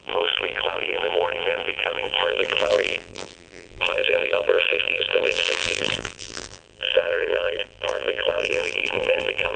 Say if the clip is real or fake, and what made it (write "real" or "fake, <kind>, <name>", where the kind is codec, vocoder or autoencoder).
fake, vocoder, BigVGAN v2